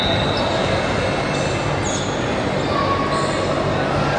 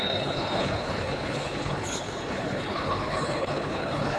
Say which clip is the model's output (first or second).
second